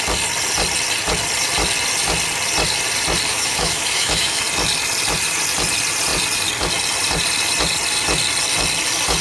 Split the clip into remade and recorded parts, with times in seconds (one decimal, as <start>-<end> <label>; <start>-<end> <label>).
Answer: 0.0-3.3 recorded; 3.3-4.4 remade; 4.4-9.2 recorded